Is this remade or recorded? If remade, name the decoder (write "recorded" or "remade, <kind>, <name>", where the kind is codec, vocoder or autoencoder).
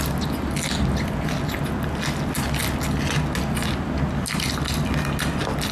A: recorded